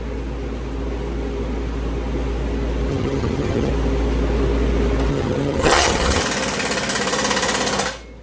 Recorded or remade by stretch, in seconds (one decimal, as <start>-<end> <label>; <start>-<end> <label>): 0.0-2.9 recorded; 2.9-3.7 remade; 3.7-5.1 recorded; 5.1-6.2 remade; 6.2-8.2 recorded